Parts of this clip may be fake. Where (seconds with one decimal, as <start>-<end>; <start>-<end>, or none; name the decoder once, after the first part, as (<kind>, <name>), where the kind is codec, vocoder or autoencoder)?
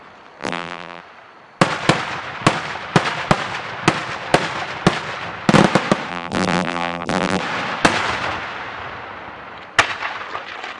0.4-1.0 (vocoder, BigVGAN v2); 6.1-7.4